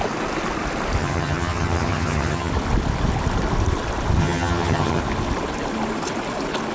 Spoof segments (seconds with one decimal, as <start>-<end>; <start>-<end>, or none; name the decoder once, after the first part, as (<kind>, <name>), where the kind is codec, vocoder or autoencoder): 1.0-2.5 (vocoder, HiFi-GAN); 4.2-5.0